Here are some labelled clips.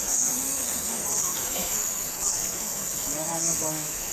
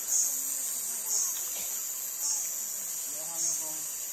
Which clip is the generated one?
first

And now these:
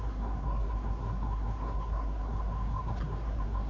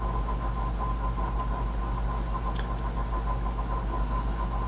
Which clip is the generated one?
first